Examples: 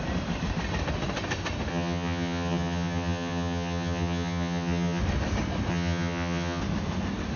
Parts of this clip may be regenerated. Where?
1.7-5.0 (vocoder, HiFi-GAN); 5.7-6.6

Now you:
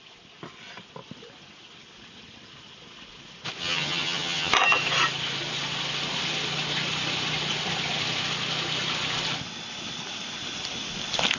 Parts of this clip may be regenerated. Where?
3.6-4.5 (vocoder, HiFi-GAN)

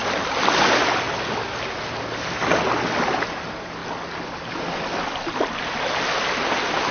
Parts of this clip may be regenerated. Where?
none

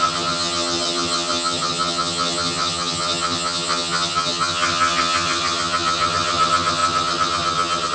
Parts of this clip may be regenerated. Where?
0.0-7.9 (vocoder, HiFi-GAN)

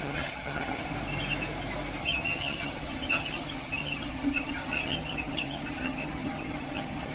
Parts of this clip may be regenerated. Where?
0.0-0.9 (vocoder, HiFi-GAN); 2.0-7.1

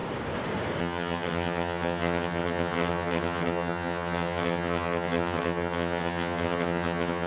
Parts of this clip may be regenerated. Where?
0.8-7.3 (vocoder, HiFi-GAN)

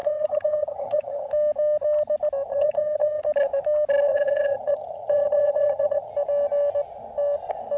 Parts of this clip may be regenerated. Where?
0.0-1.3 (vocoder, HiFi-GAN); 2.5-3.2; 4.1-6.1

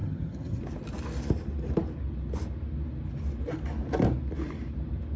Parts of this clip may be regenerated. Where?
0.0-0.6 (vocoder, HiFi-GAN)